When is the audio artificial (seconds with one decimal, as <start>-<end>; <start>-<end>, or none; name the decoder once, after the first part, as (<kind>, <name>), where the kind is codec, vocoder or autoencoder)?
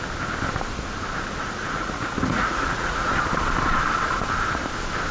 1.4-3.1 (vocoder, Vocos)